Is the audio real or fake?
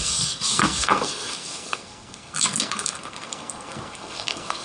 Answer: fake